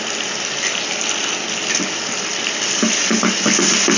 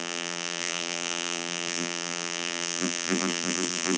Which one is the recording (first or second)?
first